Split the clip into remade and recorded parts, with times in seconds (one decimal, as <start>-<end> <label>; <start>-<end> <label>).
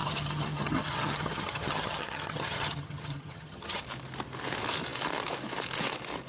0.0-3.8 remade; 3.8-6.3 recorded